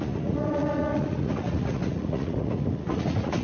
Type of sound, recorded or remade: remade